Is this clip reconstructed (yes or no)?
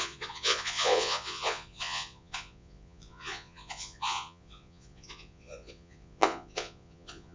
yes